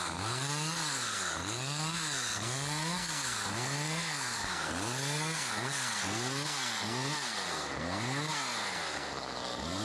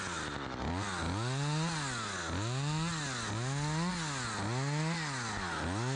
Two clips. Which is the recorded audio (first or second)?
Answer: second